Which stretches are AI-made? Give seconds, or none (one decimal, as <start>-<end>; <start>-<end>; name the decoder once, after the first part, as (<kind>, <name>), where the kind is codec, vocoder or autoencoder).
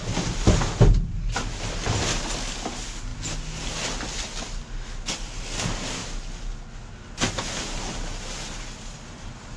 none